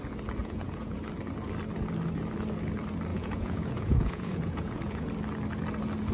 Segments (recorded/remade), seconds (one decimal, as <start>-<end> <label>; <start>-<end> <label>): 0.0-0.4 recorded; 0.4-1.0 remade; 1.0-3.1 recorded; 3.1-5.1 remade; 5.1-6.1 recorded